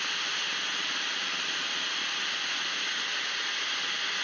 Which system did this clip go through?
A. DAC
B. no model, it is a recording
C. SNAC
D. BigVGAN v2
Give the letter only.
B